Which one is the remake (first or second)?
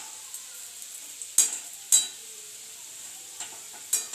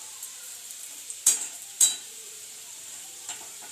second